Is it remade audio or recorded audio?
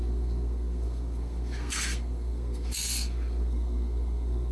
remade